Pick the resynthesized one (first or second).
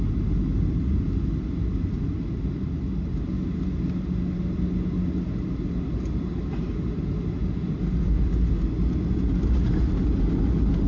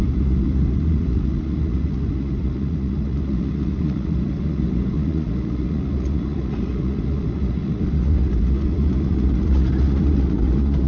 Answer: second